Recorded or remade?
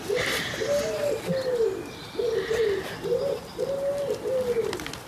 recorded